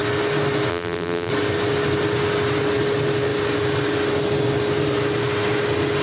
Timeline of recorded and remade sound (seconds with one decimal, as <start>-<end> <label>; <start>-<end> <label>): 0.0-0.7 recorded; 0.7-1.3 remade; 1.3-6.0 recorded